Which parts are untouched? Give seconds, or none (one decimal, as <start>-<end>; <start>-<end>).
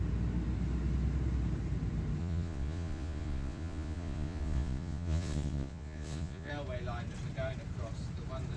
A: 0.0-2.2; 6.5-8.6